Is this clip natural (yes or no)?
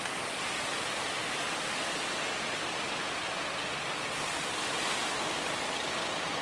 yes